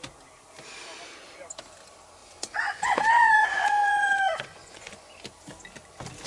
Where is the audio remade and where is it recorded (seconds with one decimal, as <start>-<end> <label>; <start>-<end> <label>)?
0.0-2.2 recorded; 2.2-5.1 remade; 5.1-6.3 recorded